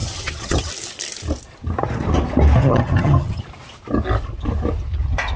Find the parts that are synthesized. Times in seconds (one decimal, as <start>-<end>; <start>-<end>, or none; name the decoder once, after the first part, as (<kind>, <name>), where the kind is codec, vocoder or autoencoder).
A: 0.0-0.7 (vocoder, HiFi-GAN); 2.6-3.4